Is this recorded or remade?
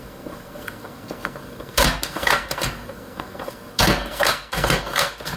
remade